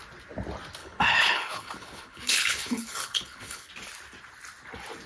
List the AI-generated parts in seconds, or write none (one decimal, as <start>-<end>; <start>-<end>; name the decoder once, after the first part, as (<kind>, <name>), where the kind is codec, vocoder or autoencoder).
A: 0.8-3.7 (codec, HILCodec)